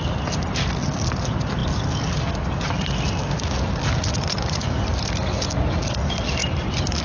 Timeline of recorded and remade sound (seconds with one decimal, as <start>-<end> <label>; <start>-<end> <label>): 0.0-6.4 recorded; 6.4-7.0 remade